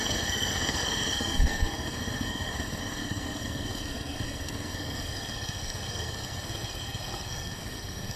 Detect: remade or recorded remade